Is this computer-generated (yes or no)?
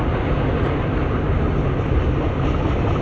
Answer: no